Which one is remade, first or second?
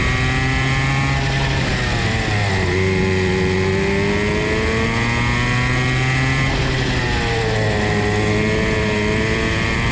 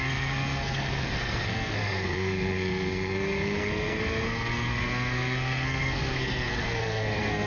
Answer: second